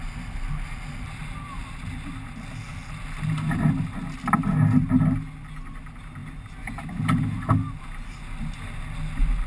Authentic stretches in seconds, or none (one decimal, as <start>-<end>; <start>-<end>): 0.0-9.5